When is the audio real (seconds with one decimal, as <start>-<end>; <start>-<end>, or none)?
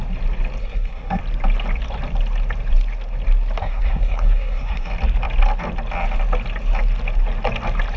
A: 0.0-0.6; 1.2-3.6; 4.9-8.0